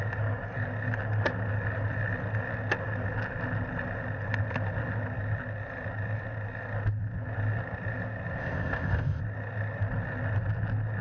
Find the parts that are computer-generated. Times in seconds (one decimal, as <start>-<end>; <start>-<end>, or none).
8.4-9.2